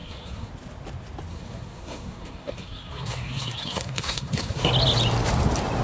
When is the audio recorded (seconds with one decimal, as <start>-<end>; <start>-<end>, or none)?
0.5-1.3; 4.7-5.8